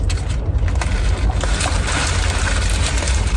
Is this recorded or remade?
recorded